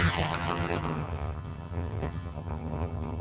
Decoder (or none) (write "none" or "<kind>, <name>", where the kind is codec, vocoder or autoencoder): vocoder, HiFi-GAN